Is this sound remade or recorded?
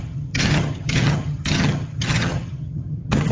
remade